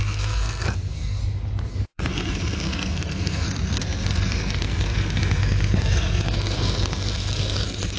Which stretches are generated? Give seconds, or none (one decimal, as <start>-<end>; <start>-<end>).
0.0-1.2; 1.7-8.0